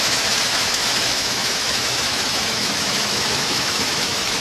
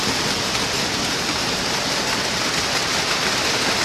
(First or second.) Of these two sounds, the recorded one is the second